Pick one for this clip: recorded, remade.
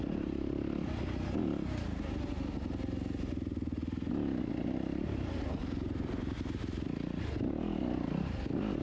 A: recorded